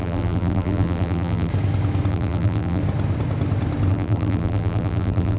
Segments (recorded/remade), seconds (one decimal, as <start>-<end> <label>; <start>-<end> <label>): 0.0-1.5 remade; 1.5-2.1 recorded; 2.1-2.8 remade; 2.8-3.9 recorded; 3.9-5.4 remade